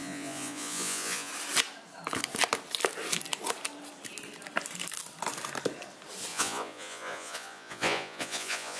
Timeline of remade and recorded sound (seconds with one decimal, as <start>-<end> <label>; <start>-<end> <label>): 0.0-1.3 remade; 1.3-6.3 recorded; 6.3-8.8 remade